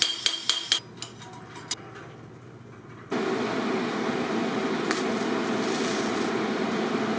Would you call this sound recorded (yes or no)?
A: yes